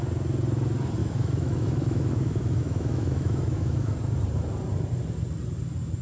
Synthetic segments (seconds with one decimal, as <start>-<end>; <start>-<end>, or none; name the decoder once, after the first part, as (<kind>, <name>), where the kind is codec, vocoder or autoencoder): 1.0-3.9 (autoencoder, DAC-VAE)